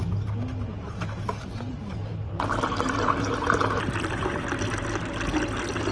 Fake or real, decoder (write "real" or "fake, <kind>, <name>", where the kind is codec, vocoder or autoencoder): real